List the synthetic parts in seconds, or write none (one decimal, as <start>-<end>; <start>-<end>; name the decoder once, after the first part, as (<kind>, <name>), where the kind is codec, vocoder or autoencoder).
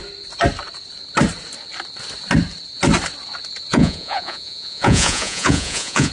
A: 3.7-6.1 (vocoder, Vocos)